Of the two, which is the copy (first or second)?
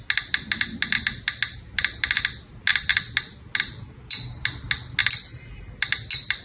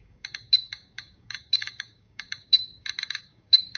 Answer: second